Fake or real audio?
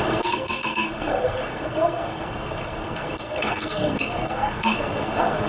fake